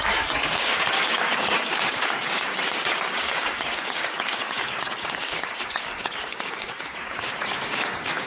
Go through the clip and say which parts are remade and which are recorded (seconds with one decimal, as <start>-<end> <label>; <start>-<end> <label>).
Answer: 0.0-8.3 remade